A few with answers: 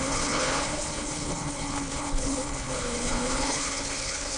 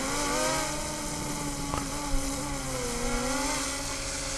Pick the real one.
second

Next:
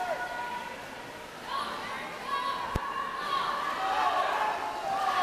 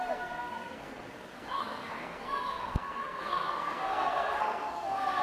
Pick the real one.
first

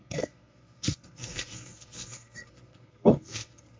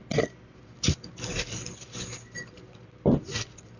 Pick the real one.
second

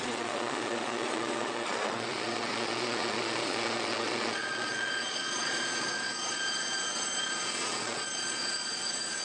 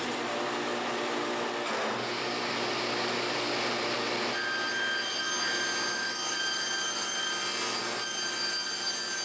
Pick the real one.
second